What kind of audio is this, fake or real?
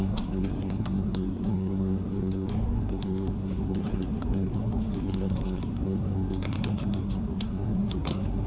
fake